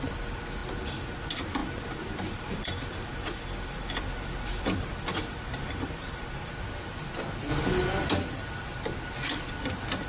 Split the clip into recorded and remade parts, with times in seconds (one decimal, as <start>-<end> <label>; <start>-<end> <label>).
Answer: 0.0-0.6 recorded; 0.6-1.2 remade; 1.2-1.6 recorded; 1.6-6.5 remade; 6.5-10.1 recorded